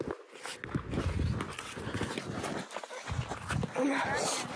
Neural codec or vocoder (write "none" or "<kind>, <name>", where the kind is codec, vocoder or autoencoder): none